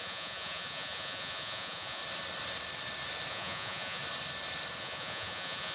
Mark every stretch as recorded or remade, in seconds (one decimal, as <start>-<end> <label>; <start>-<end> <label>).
0.0-2.0 remade; 2.0-3.3 recorded; 3.3-4.0 remade; 4.0-4.8 recorded; 4.8-5.7 remade